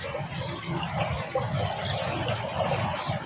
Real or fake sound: real